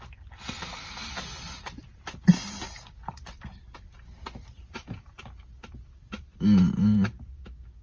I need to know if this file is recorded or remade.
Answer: recorded